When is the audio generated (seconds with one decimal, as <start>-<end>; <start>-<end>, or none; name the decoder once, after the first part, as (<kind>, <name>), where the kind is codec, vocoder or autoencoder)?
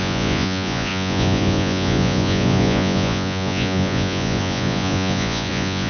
0.0-5.9 (vocoder, Vocos)